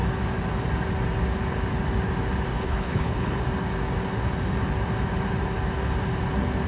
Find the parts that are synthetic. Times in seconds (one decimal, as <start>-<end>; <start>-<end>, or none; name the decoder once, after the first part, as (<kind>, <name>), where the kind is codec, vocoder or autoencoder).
2.5-3.4 (codec, HILCodec)